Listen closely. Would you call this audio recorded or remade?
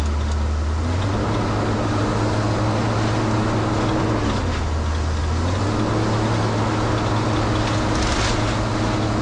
recorded